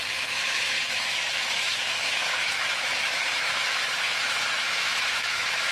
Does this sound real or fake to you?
fake